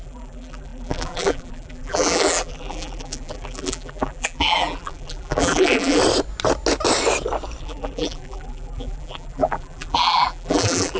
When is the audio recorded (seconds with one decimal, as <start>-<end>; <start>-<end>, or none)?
6.0-7.6